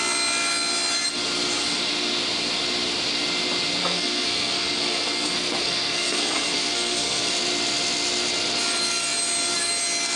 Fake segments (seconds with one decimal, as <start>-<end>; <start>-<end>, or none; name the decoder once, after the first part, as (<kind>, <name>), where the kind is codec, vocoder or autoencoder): 3.8-7.3 (codec, SNAC)